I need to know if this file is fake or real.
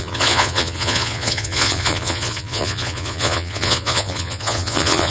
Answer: fake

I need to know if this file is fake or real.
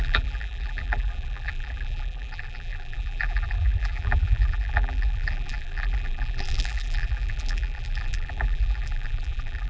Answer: fake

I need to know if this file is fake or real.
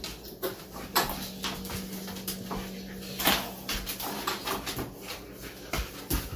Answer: real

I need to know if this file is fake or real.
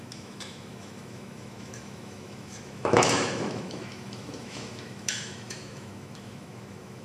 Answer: fake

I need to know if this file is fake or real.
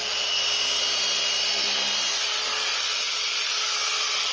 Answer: real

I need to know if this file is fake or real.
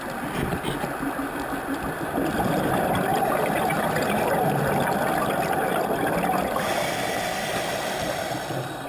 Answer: real